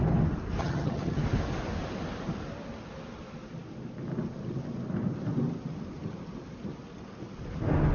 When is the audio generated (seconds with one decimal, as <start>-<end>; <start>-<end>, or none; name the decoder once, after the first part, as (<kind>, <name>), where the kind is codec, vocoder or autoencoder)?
0.6-1.2 (vocoder, HiFi-GAN)